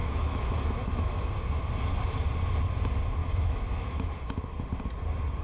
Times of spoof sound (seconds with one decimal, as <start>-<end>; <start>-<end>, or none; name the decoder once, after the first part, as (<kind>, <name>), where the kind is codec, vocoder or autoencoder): 0.0-1.3 (autoencoder, DAC-VAE); 3.2-4.5